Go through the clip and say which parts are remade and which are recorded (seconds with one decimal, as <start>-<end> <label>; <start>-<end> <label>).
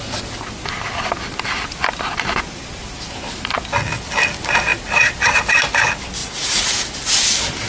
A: 0.0-6.2 recorded; 6.2-6.7 remade; 6.7-7.7 recorded